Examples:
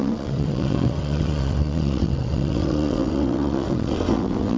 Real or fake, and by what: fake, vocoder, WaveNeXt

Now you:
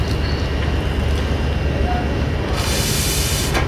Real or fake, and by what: real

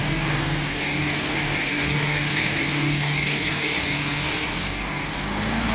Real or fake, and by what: fake, codec, DAC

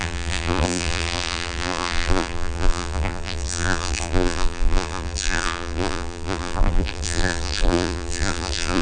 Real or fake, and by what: fake, vocoder, BigVGAN v2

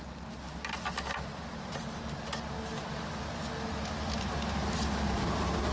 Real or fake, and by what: real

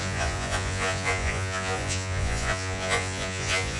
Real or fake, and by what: fake, vocoder, Vocos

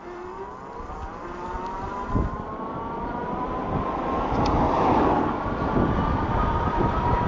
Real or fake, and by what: real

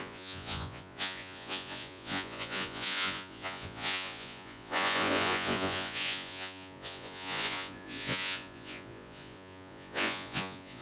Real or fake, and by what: fake, vocoder, Vocos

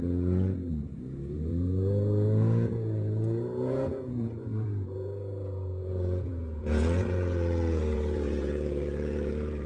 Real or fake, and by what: fake, vocoder, Vocos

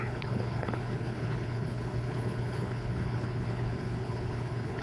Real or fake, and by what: fake, codec, HILCodec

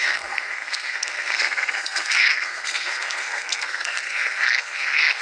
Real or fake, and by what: fake, codec, SNAC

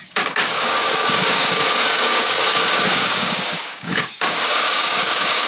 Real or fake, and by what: fake, codec, DAC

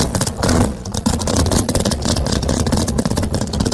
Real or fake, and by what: fake, vocoder, Vocos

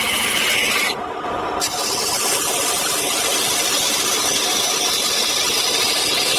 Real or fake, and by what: real